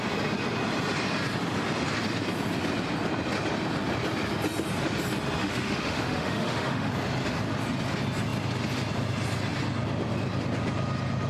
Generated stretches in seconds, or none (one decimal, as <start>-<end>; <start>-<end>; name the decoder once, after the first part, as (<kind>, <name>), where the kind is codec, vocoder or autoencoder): 5.4-6.9 (autoencoder, DAC-VAE)